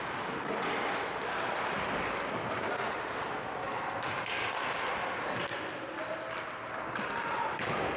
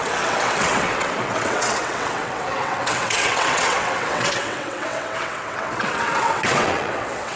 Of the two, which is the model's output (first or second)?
second